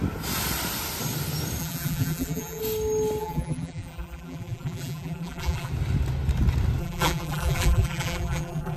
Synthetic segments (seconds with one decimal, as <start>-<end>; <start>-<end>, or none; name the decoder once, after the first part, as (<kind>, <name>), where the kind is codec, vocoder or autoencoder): 1.6-2.6 (vocoder, BigVGAN v2); 3.2-5.7; 6.8-8.8